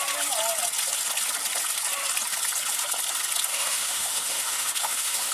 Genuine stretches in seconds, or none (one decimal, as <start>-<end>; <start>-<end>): 0.0-3.5